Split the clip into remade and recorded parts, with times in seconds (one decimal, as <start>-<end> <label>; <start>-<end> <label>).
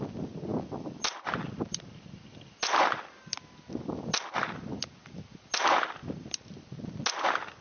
0.0-7.6 recorded